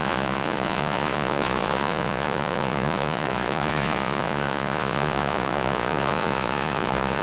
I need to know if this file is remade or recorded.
remade